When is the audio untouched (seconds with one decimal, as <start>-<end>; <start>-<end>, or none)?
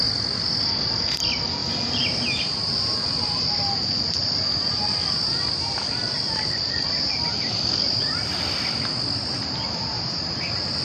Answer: 0.0-4.2; 4.8-10.8